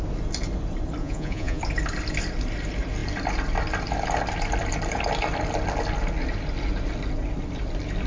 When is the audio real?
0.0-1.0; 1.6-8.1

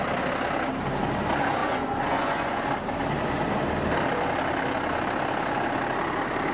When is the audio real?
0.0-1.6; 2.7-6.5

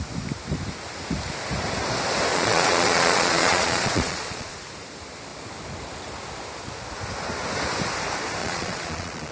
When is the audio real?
0.0-2.3; 4.5-8.4

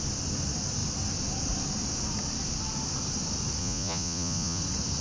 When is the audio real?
0.0-3.6; 4.6-5.0